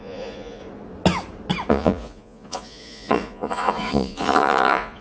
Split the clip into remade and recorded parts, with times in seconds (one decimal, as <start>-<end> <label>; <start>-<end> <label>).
0.0-0.6 remade; 0.6-1.7 recorded; 1.7-5.0 remade